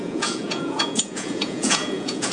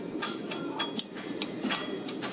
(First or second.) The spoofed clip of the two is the first